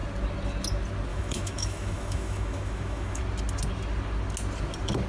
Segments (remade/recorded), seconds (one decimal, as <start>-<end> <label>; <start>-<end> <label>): 0.0-1.1 recorded; 1.1-3.2 remade; 3.2-5.1 recorded